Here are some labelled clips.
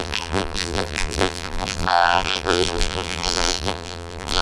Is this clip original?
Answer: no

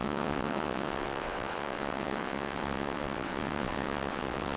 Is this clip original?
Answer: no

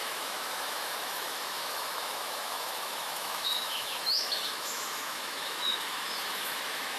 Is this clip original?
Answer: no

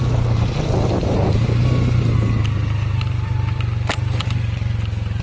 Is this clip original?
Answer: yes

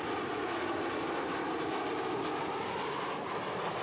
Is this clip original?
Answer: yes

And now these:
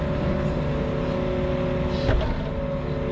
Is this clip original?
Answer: yes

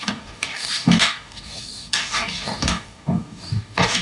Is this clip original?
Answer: no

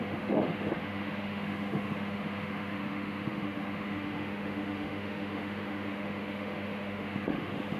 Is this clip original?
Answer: no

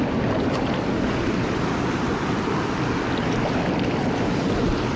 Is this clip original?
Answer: yes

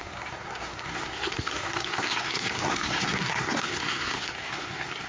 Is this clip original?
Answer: no